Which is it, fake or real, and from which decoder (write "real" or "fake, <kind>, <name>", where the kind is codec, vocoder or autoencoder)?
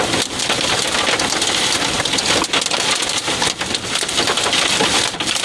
fake, vocoder, BigVGAN v2